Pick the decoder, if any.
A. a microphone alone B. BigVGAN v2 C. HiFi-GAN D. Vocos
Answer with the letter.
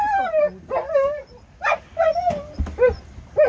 A